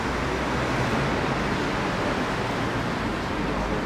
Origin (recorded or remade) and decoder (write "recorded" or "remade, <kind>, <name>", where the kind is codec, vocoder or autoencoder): recorded